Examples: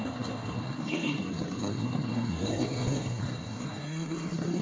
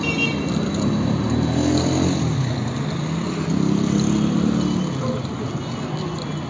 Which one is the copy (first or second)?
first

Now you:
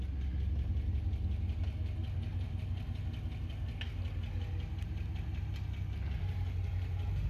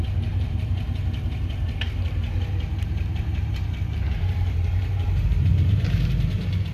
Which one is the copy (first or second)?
second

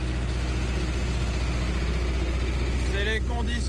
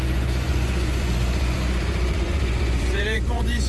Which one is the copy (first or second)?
second